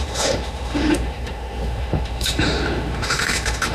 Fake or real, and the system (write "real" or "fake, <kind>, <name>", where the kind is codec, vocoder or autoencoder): fake, autoencoder, DAC-VAE